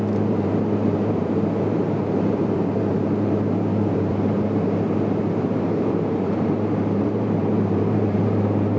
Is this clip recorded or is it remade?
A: remade